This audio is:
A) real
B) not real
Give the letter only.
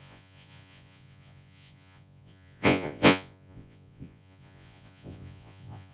B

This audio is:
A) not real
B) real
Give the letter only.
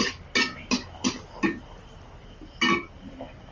B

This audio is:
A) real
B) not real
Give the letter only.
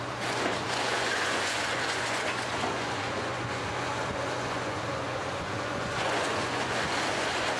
B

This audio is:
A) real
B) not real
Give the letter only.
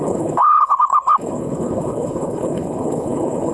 B